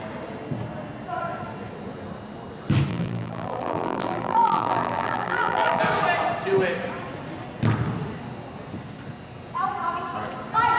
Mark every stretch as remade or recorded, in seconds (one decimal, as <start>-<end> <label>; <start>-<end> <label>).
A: 0.0-2.9 recorded; 2.9-5.8 remade; 5.8-10.8 recorded